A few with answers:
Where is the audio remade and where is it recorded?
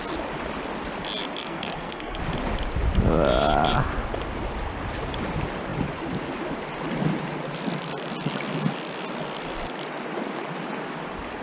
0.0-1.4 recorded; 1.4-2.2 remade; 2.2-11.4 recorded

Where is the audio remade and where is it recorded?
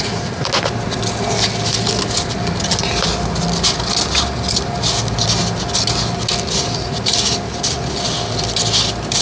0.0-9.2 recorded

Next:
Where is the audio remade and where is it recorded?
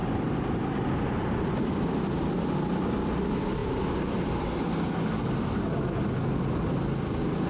0.0-7.5 recorded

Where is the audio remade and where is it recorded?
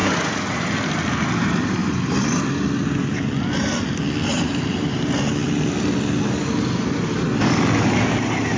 0.0-1.8 recorded; 1.8-2.4 remade; 2.4-4.3 recorded; 4.3-5.0 remade; 5.0-8.6 recorded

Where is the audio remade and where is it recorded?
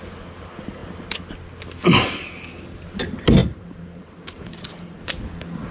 0.0-3.4 recorded; 3.4-5.0 remade; 5.0-5.7 recorded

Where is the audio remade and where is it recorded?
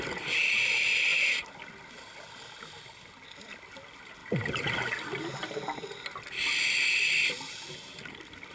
0.0-8.5 recorded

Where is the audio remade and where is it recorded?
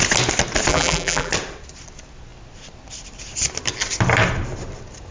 0.0-0.7 recorded; 0.7-1.3 remade; 1.3-5.1 recorded